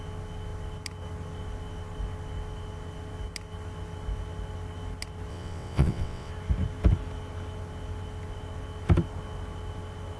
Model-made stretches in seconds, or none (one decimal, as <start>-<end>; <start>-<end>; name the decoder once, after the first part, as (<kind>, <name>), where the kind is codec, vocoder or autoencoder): 5.3-6.3 (vocoder, WaveNeXt)